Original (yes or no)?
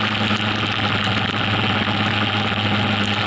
yes